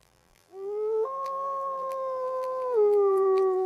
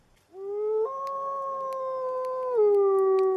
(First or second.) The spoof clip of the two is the first